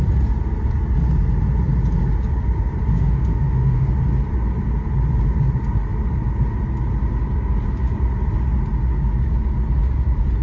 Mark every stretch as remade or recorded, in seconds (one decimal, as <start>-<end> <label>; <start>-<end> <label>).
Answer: 0.0-2.9 recorded; 2.9-3.9 remade; 3.9-10.4 recorded